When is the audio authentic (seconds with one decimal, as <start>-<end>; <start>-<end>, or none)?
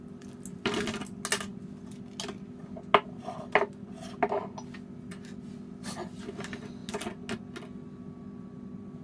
0.0-9.0